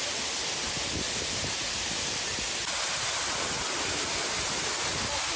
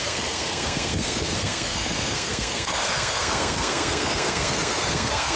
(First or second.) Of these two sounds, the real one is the first